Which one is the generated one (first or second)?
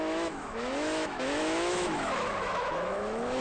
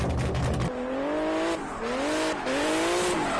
first